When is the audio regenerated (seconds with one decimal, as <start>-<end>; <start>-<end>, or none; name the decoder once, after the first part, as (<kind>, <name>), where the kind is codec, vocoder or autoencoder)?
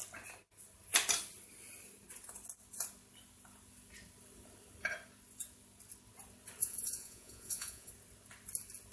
6.6-7.9 (vocoder, Vocos)